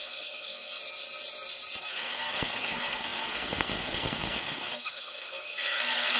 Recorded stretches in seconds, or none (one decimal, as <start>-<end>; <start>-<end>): 0.8-1.8